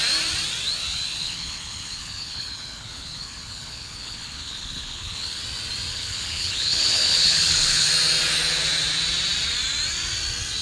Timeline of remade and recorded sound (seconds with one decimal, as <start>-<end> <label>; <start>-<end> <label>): 0.0-1.2 recorded; 1.2-5.4 remade; 5.4-5.9 recorded; 5.9-7.9 remade; 7.9-10.6 recorded